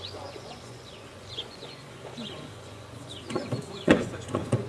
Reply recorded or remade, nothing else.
remade